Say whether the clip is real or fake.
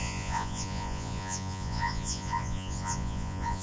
fake